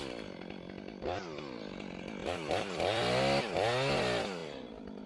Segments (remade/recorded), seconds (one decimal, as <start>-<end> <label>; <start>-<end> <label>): 0.0-2.2 recorded; 2.2-3.4 remade; 3.4-4.4 recorded; 4.4-5.1 remade